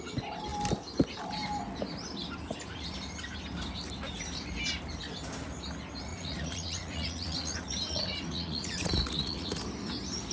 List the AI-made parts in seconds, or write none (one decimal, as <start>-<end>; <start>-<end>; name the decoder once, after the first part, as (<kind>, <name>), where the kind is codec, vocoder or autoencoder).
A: 6.1-9.6 (vocoder, Vocos)